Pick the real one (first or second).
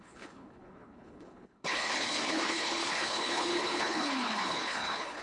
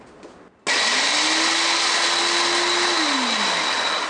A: second